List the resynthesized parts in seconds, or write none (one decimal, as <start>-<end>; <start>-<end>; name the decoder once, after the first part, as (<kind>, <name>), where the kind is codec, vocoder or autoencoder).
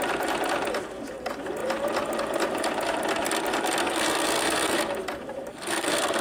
3.8-4.8 (codec, SNAC); 5.5-6.2